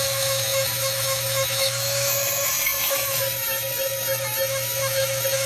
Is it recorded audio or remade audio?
remade